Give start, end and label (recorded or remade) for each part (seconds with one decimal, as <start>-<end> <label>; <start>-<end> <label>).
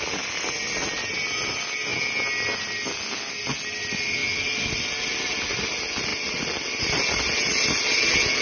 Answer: 0.0-8.4 recorded